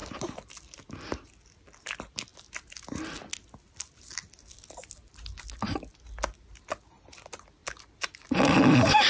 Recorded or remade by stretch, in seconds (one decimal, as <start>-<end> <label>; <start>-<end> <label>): 0.0-7.6 recorded; 7.6-9.1 remade